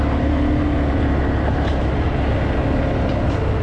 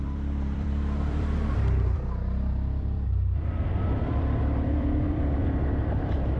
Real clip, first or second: first